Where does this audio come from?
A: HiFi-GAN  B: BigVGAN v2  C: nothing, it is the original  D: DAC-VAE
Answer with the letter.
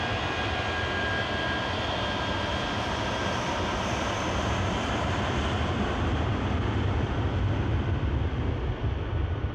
B